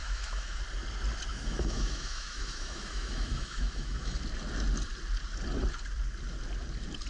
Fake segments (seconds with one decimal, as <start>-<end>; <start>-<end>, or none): 0.0-0.6; 1.3-4.2